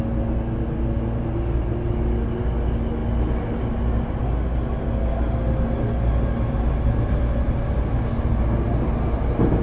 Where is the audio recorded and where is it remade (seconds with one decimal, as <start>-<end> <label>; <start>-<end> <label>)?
0.0-9.6 recorded